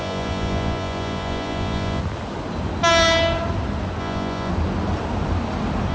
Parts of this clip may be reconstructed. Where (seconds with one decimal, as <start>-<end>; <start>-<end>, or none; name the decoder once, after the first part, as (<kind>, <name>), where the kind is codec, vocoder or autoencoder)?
0.0-2.0 (vocoder, Vocos); 4.0-4.5